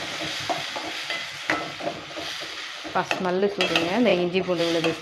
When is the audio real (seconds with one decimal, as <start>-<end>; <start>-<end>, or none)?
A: 0.0-5.0